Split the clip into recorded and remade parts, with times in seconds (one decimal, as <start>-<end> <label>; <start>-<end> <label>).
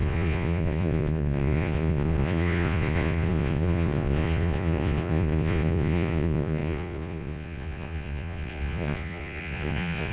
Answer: 0.0-10.1 remade